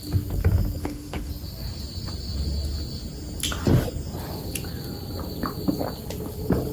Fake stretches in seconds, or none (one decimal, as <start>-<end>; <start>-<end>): 0.8-1.3